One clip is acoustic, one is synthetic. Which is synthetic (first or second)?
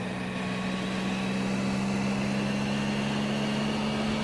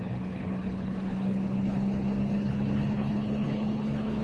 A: second